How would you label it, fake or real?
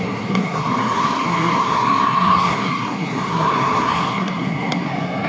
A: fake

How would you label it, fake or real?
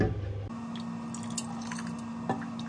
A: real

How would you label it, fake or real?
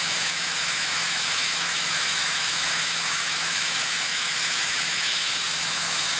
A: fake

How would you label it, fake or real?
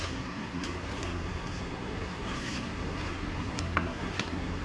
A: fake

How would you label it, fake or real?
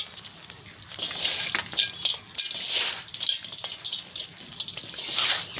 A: real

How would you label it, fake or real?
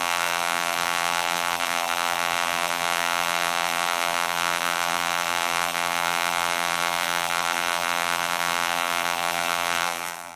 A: fake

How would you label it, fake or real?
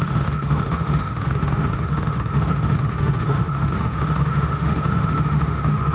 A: fake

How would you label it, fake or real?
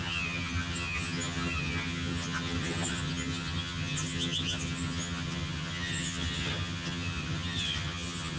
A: fake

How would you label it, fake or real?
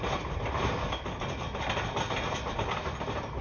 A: real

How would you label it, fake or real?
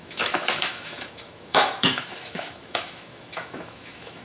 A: fake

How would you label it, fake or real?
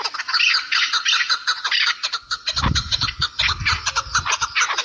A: real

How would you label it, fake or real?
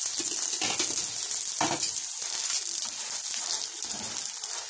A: real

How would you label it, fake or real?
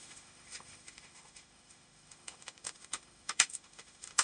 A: fake